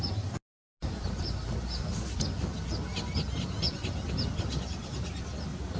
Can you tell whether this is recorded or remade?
recorded